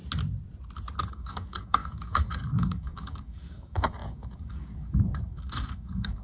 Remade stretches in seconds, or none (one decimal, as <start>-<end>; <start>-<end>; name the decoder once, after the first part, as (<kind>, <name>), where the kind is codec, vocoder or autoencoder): 1.1-6.2 (codec, DAC)